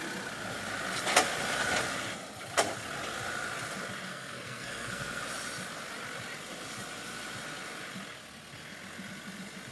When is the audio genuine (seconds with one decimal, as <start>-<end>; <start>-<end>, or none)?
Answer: 0.0-4.1; 5.2-9.7